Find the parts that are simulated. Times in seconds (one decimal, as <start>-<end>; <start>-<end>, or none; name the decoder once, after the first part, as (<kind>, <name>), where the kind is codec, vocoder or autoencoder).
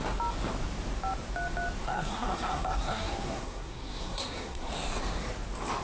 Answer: 1.8-4.7 (codec, SNAC)